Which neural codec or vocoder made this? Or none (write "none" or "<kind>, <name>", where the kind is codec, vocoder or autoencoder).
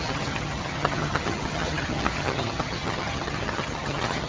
vocoder, HiFi-GAN